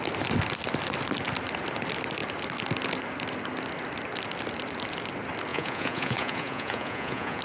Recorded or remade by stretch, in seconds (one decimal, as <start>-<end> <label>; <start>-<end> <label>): 0.0-5.5 recorded; 5.5-7.4 remade